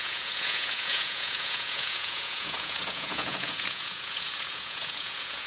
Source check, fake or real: fake